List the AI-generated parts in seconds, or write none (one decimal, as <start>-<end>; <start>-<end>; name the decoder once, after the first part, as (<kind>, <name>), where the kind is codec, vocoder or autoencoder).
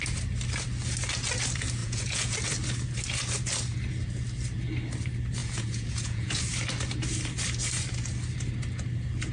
1.8-2.4 (vocoder, Vocos); 5.4-6.4